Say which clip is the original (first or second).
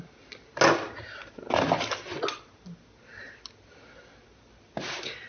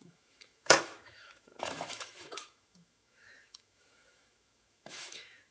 first